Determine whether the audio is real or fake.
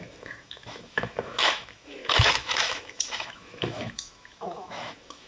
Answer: fake